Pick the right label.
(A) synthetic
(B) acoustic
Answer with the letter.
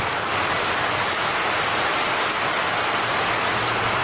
B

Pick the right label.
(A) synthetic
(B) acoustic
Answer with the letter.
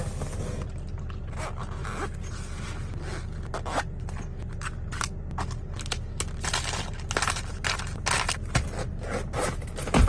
B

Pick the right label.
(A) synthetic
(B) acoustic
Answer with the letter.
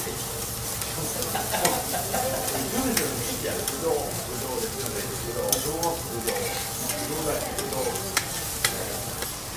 B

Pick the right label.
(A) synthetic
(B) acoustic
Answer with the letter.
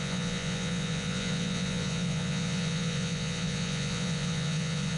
A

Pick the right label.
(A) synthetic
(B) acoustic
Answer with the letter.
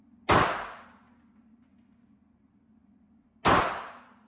B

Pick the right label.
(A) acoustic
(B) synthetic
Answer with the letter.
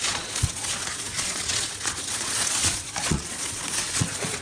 B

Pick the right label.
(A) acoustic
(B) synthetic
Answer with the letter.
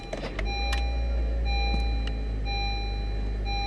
A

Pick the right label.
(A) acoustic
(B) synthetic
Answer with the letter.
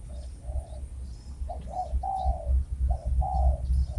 A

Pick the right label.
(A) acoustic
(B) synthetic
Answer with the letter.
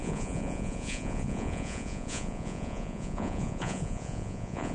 B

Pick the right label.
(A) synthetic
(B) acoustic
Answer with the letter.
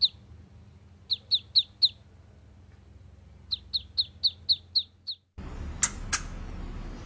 B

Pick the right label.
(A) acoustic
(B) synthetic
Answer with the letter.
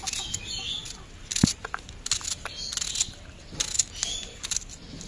A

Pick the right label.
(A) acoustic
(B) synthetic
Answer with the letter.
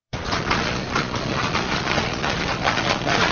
B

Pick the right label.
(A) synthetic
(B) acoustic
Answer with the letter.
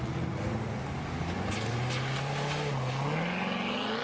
B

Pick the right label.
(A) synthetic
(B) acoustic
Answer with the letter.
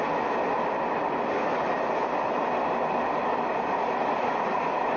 B